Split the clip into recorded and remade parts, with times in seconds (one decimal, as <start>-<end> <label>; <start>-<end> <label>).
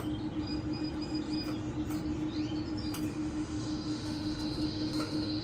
0.0-3.1 recorded; 3.1-5.4 remade